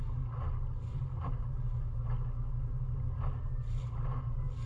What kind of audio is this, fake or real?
real